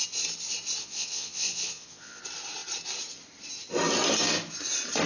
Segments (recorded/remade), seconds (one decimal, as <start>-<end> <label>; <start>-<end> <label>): 0.0-0.8 recorded; 0.8-2.2 remade; 2.2-5.1 recorded